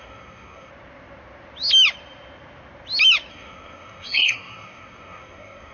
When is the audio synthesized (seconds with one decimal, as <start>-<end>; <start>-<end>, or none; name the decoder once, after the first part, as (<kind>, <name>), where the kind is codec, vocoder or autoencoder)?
0.0-0.7 (codec, SNAC); 3.3-5.7